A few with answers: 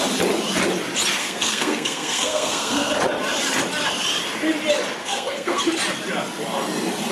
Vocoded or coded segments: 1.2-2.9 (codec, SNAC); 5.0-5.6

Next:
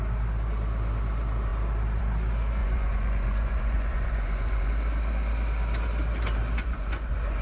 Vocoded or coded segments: 2.6-4.7 (vocoder, Vocos); 6.6-7.4

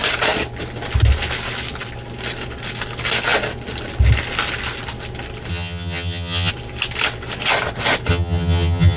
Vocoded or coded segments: 5.5-6.5 (vocoder, HiFi-GAN); 8.1-9.0